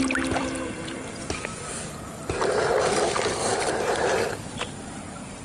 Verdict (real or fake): fake